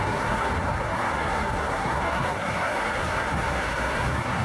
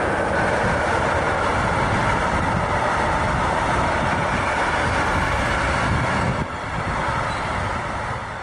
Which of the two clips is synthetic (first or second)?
first